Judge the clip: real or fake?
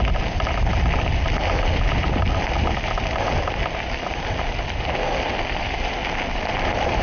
real